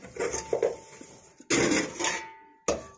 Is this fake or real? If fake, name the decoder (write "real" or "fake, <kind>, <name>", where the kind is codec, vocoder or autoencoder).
real